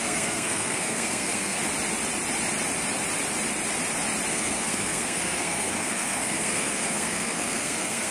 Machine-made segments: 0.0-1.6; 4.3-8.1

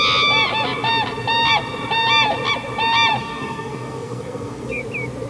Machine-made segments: 3.2-4.8

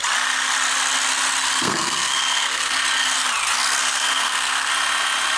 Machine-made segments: 1.6-2.7; 3.8-4.7

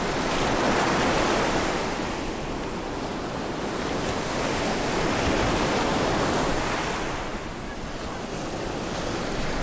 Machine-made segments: none

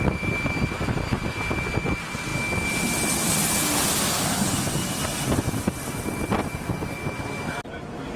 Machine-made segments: none

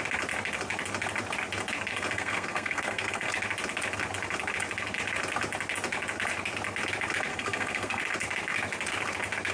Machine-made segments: 1.9-3.3; 7.3-8.0

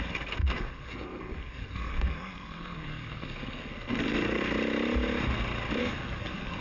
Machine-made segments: 0.4-4.4; 5.8-6.6

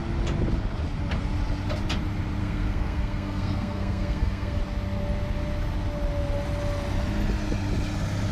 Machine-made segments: 2.4-4.6